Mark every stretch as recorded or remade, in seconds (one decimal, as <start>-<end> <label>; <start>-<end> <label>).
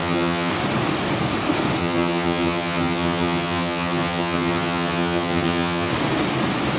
0.0-0.5 remade; 0.5-1.8 recorded; 1.8-5.9 remade; 5.9-6.8 recorded